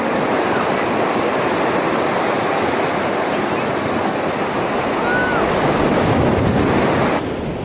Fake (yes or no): no